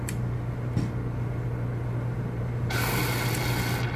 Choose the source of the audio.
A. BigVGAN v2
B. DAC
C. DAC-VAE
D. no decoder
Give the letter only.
D